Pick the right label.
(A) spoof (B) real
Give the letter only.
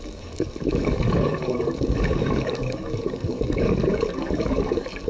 A